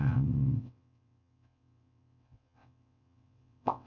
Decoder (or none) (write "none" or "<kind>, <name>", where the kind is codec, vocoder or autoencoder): vocoder, WaveNeXt